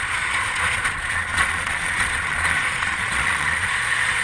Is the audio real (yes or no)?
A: no